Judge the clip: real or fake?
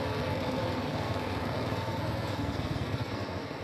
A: fake